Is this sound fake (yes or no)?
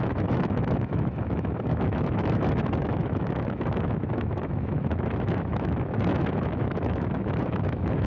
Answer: yes